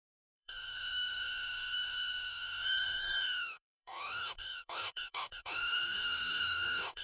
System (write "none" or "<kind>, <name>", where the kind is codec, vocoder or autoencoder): codec, DAC